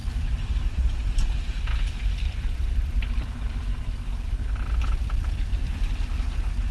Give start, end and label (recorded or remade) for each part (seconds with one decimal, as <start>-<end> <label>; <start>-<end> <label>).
0.0-0.6 remade; 0.6-1.7 recorded; 1.7-4.4 remade; 4.4-5.5 recorded; 5.5-6.2 remade; 6.2-6.7 recorded